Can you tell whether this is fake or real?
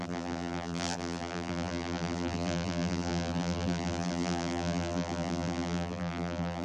fake